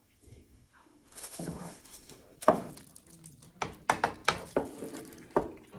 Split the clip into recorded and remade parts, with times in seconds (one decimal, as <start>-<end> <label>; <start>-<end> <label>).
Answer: 0.0-2.7 remade; 2.7-5.8 recorded